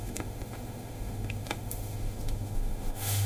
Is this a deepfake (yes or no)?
yes